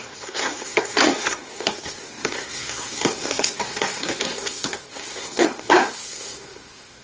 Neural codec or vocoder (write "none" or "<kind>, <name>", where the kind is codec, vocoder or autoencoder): codec, SNAC